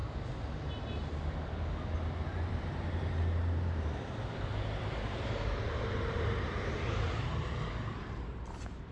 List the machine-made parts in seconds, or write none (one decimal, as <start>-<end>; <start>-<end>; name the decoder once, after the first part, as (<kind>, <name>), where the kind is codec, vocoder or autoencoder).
2.5-8.9 (vocoder, BigVGAN v2)